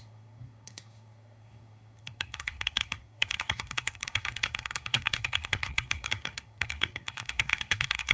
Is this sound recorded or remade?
remade